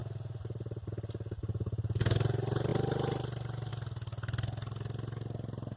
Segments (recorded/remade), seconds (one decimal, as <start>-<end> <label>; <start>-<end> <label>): 0.0-5.8 recorded